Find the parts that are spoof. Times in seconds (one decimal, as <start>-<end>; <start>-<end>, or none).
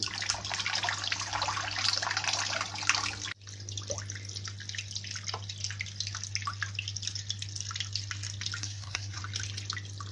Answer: 8.6-9.2